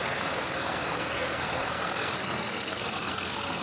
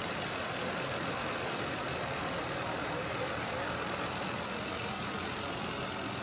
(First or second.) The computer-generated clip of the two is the first